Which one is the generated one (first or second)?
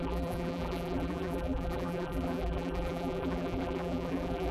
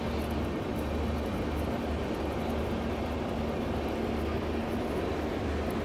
first